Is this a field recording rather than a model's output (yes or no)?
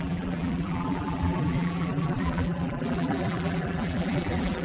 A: no